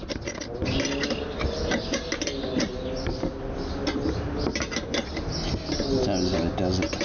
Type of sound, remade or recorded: recorded